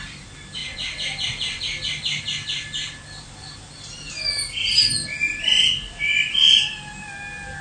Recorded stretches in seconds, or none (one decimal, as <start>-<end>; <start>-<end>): 0.0-7.6